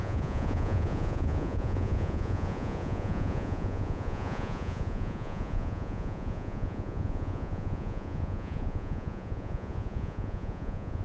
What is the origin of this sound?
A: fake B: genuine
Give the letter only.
A